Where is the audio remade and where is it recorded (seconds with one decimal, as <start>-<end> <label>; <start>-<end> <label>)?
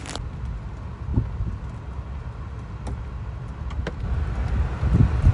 0.0-5.3 recorded